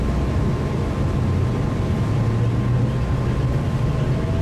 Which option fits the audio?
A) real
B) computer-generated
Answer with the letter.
A